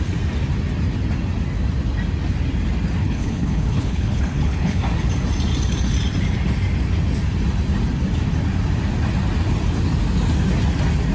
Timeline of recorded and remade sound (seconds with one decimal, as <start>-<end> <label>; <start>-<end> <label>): 0.0-3.0 recorded; 3.0-4.8 remade; 4.8-11.1 recorded